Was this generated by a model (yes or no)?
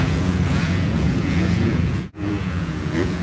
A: yes